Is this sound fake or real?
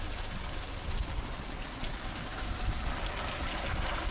real